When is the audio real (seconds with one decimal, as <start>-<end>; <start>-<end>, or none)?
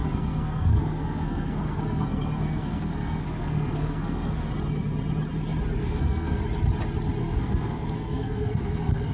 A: 4.5-5.8; 6.4-7.2